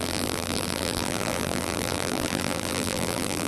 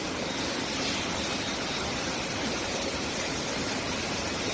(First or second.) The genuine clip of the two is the second